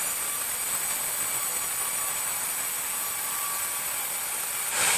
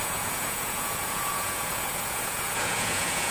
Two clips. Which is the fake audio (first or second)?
second